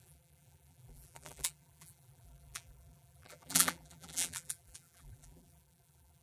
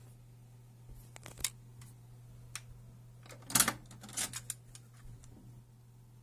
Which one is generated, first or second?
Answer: first